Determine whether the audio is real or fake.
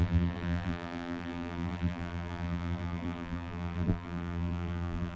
fake